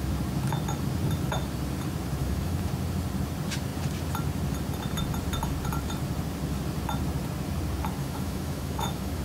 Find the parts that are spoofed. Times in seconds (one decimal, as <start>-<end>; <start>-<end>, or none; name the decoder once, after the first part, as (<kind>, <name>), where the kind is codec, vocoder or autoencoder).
2.2-2.7 (autoencoder, DAC-VAE); 8.0-9.2